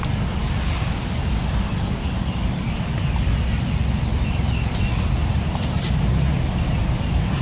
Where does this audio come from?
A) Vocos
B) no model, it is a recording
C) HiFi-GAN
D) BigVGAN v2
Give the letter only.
B